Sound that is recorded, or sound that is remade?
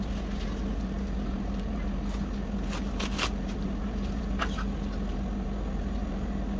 recorded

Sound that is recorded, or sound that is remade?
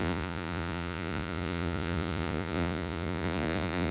remade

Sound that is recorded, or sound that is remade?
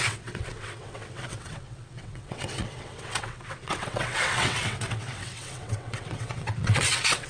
remade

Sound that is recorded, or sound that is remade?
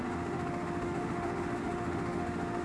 remade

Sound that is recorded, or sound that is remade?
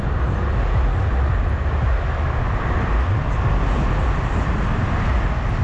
recorded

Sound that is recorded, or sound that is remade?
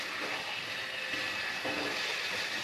recorded